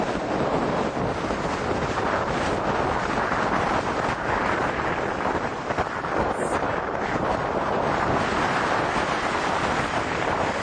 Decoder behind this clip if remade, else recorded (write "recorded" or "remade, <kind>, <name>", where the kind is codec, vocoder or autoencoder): recorded